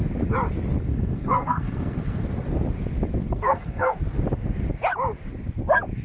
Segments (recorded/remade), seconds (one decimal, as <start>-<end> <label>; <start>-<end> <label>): 0.0-0.9 recorded; 0.9-2.2 remade; 2.2-3.2 recorded; 3.2-3.9 remade; 3.9-6.0 recorded